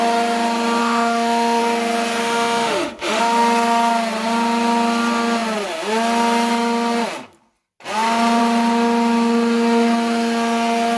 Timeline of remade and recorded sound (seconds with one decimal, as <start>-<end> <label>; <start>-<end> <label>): 0.0-0.8 recorded; 0.8-1.6 remade; 1.6-2.2 recorded; 2.2-3.2 remade; 3.2-11.0 recorded